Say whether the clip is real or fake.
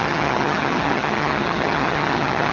fake